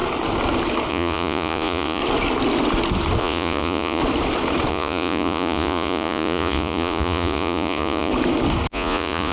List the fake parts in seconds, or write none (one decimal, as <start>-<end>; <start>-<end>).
0.9-2.0; 3.2-4.0; 4.7-8.1; 8.7-9.3